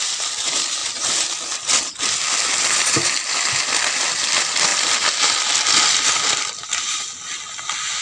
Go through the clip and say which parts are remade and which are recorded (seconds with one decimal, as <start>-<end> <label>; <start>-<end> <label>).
0.0-8.0 recorded

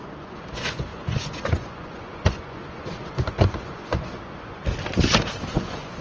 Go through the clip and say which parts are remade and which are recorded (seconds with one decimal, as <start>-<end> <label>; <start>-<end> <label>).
0.0-4.6 remade; 4.6-5.5 recorded; 5.5-6.0 remade